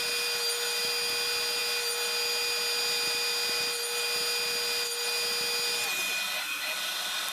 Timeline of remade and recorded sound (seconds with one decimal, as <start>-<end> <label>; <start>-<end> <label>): 0.0-7.3 recorded